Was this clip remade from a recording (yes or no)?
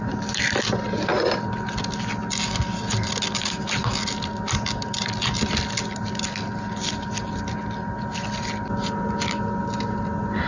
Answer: no